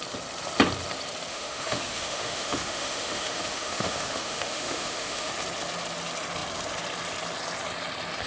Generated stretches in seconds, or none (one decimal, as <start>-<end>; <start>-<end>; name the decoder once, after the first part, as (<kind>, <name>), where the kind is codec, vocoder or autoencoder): 1.3-5.3 (autoencoder, DAC-VAE)